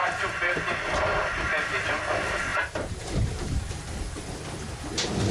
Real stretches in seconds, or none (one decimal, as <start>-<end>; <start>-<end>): 0.7-2.5; 3.7-5.3